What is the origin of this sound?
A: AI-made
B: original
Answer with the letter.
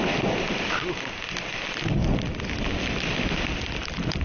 B